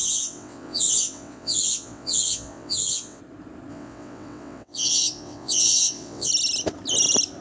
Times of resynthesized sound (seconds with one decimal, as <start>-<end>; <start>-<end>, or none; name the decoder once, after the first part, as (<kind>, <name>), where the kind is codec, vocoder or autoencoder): 0.0-3.2 (vocoder, WaveNeXt); 3.7-6.3